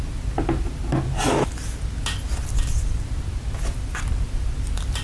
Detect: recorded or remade recorded